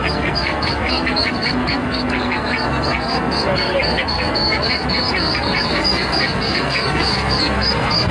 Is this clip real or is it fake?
fake